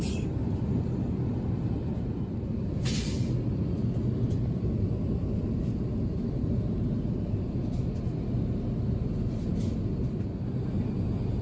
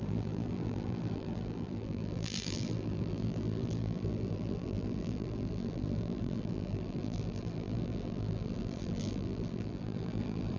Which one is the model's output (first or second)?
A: second